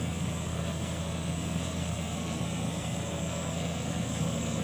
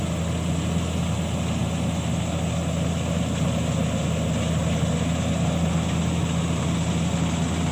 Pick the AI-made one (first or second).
first